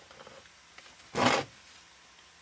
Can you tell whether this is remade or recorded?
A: recorded